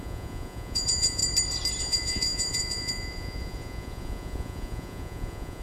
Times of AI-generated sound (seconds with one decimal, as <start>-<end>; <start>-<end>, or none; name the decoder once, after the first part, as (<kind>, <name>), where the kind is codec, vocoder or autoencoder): 0.0-1.2 (vocoder, Vocos); 1.8-5.6